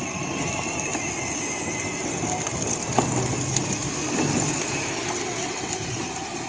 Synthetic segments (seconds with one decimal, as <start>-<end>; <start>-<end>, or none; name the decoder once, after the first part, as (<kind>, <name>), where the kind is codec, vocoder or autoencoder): none